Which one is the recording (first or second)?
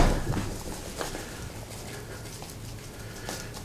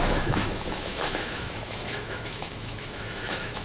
first